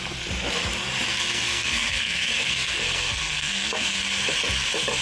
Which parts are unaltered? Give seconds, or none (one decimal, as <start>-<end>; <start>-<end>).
0.0-1.1; 4.0-5.0